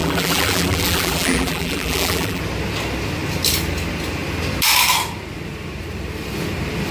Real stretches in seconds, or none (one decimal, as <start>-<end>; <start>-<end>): 2.4-6.9